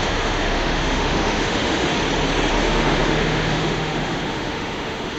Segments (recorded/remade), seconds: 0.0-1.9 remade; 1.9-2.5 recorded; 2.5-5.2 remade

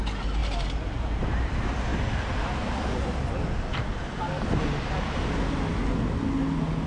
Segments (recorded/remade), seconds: 0.0-0.4 recorded; 0.4-1.5 remade; 1.5-6.9 recorded

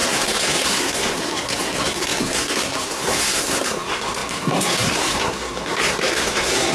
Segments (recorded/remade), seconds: 0.0-6.7 remade

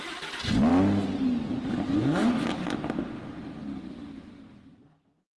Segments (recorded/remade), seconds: 0.0-5.4 recorded

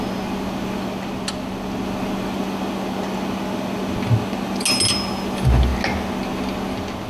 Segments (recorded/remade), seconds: 0.0-7.1 recorded

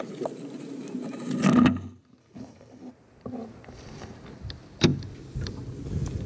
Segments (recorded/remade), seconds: 0.0-2.2 recorded; 2.2-2.9 remade; 2.9-6.3 recorded

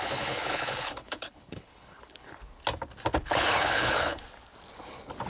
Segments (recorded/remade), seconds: 0.0-2.4 remade; 2.4-3.2 recorded; 3.2-4.2 remade; 4.2-5.3 recorded

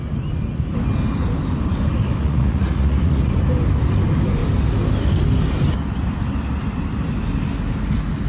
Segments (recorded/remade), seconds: 0.0-2.2 recorded; 2.2-3.3 remade; 3.3-8.3 recorded